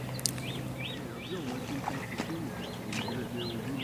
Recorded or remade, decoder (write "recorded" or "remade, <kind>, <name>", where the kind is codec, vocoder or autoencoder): recorded